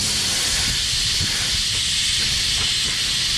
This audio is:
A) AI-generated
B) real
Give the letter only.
B